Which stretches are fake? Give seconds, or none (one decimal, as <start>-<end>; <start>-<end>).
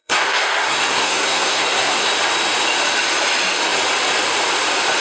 0.0-2.1